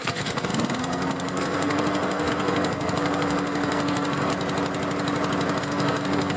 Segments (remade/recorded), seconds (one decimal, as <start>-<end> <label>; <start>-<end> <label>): 0.0-4.3 remade; 4.3-5.6 recorded; 5.6-6.4 remade